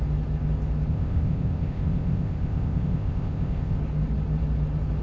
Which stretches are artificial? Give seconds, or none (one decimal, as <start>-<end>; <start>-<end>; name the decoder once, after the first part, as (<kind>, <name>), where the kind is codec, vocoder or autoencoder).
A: 0.9-3.8 (codec, ZipCodec)